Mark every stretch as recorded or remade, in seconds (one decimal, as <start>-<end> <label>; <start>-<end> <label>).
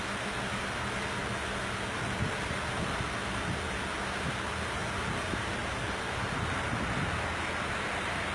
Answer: 0.0-8.3 recorded